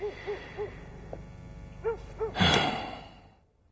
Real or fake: real